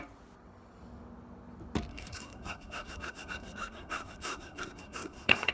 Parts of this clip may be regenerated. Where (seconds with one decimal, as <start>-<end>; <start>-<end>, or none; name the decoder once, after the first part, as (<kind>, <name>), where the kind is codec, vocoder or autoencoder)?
1.9-5.5 (codec, SNAC)